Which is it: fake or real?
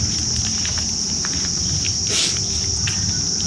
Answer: real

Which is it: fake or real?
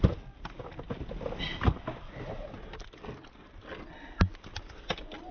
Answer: real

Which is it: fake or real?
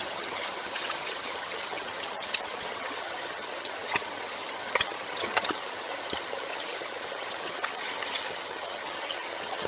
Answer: fake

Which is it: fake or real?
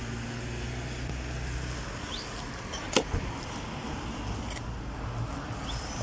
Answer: real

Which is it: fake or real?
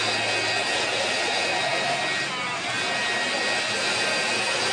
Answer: real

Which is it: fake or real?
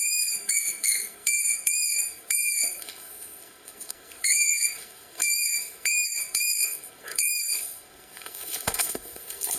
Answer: fake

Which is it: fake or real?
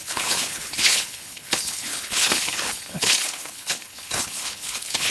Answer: fake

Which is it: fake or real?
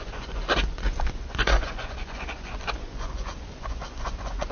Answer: fake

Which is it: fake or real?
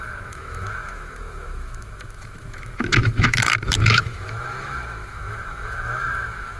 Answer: fake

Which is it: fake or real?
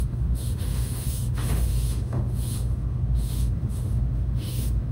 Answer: fake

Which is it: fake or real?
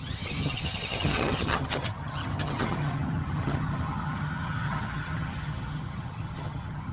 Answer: fake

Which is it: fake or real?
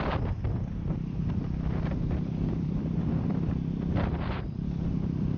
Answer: fake